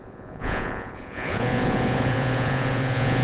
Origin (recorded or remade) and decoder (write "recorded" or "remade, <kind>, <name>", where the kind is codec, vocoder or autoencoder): remade, vocoder, Vocos